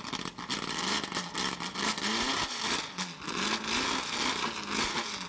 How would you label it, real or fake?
real